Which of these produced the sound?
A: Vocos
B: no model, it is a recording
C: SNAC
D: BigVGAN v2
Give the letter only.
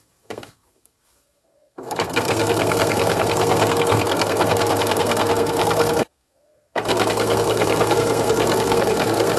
C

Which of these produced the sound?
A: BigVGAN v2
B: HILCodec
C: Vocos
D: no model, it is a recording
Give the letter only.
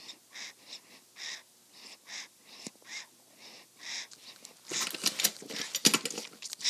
D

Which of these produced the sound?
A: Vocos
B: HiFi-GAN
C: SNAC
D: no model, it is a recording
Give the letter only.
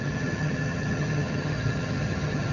B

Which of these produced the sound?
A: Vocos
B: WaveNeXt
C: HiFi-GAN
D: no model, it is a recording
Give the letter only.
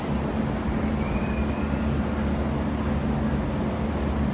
D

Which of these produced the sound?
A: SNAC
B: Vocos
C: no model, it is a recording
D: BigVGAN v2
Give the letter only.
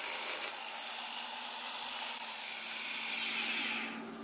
C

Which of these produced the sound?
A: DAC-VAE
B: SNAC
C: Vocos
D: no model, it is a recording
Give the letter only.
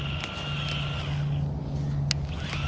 D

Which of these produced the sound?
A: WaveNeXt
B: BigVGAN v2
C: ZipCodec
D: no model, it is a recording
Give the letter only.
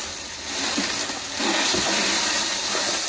D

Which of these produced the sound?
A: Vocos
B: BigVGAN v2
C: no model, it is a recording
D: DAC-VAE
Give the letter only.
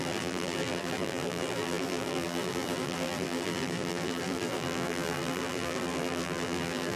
B